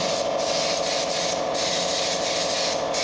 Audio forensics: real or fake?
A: real